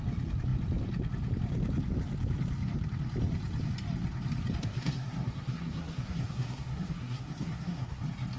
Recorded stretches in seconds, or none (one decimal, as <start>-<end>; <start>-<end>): 0.0-4.6; 8.0-8.4